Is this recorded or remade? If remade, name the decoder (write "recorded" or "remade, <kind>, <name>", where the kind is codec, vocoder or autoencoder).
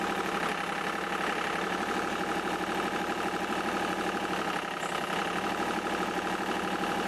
recorded